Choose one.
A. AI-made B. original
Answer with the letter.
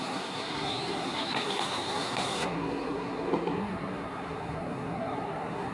A